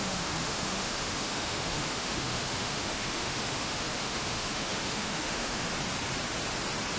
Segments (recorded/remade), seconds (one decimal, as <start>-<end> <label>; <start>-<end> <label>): 0.0-5.7 remade; 5.7-7.0 recorded